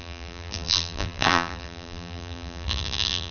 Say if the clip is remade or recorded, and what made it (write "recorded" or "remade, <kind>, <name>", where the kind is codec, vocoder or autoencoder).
remade, vocoder, BigVGAN v2